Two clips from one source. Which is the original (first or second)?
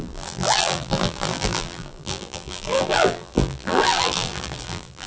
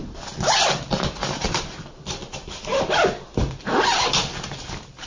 second